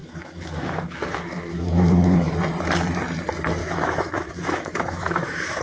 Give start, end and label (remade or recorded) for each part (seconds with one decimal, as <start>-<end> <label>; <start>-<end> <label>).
0.0-2.3 remade; 2.3-3.6 recorded; 3.6-5.6 remade